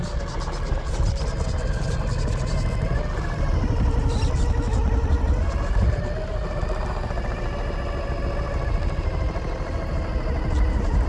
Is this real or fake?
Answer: real